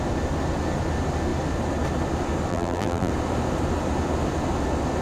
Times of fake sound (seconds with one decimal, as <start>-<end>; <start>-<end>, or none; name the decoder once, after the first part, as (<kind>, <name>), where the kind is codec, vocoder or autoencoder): 2.5-3.1 (vocoder, BigVGAN v2)